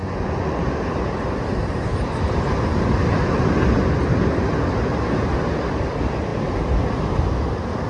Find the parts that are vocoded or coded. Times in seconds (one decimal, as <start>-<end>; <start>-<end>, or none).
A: 0.0-0.6